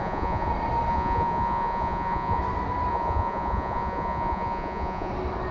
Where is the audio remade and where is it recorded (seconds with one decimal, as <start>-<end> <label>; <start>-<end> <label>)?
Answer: 0.0-0.5 remade; 0.5-0.9 recorded; 0.9-2.4 remade; 2.4-2.9 recorded; 2.9-5.1 remade; 5.1-5.5 recorded